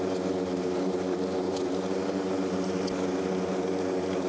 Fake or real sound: real